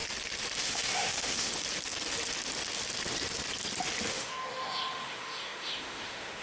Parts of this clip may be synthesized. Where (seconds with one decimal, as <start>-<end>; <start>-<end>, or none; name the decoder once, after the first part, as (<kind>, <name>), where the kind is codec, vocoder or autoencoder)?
0.6-1.5 (autoencoder, DAC-VAE); 4.1-6.4